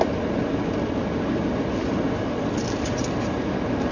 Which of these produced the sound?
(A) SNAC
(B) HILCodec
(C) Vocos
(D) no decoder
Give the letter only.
D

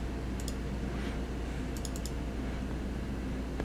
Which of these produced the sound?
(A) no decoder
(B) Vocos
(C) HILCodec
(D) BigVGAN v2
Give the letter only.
A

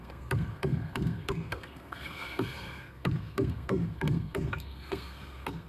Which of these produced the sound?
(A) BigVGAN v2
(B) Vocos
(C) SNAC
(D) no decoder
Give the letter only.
C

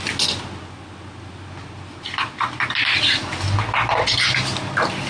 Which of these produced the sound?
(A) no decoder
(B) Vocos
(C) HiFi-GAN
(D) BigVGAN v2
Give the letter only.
A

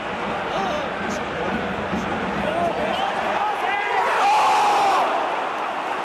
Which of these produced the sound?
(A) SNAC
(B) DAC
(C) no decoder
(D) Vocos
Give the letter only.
C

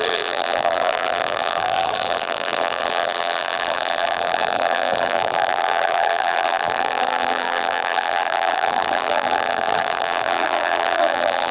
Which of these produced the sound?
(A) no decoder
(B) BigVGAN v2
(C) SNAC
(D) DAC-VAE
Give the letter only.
B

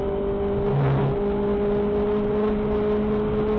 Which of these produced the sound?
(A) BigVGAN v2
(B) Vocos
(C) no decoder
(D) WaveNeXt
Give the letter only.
C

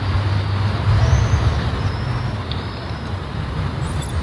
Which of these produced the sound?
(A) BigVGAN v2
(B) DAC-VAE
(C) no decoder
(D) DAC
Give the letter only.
C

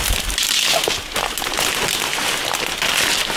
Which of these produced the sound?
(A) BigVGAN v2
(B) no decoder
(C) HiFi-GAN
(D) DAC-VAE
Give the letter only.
B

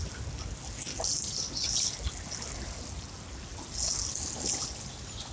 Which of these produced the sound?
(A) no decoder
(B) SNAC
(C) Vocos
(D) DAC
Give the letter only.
A